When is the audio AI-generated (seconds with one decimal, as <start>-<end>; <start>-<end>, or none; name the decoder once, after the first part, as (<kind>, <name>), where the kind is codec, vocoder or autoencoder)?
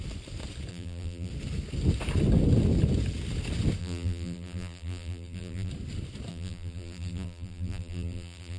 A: 0.7-1.3 (vocoder, BigVGAN v2); 3.8-5.7; 6.3-8.6